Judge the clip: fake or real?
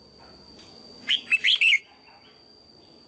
real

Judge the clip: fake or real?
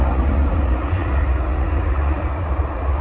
fake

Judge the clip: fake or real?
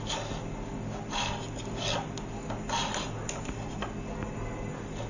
real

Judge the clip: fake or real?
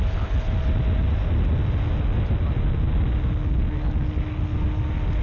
real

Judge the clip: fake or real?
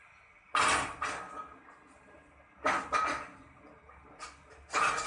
real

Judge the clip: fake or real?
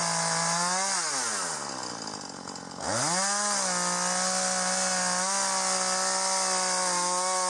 real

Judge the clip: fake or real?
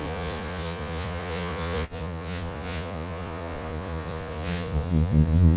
fake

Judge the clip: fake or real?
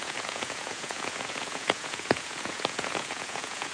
fake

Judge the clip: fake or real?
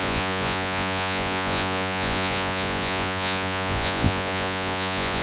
fake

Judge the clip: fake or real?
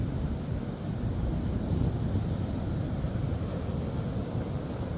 real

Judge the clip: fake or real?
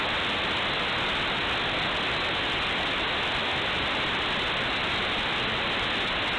real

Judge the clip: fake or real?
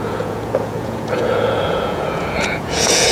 fake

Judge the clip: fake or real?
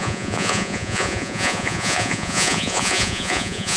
fake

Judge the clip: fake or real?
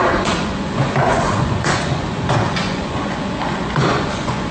fake